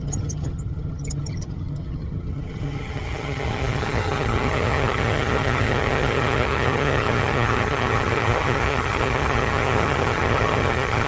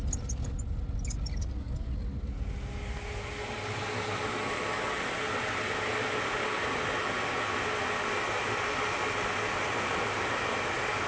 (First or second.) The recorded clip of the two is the second